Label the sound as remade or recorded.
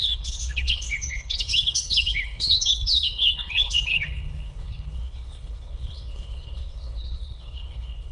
remade